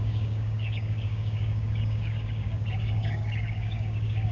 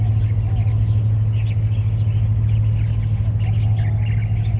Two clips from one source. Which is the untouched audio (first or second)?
second